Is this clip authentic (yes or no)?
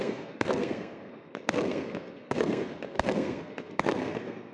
no